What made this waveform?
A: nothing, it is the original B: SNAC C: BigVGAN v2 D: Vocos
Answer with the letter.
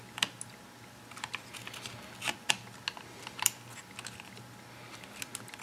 A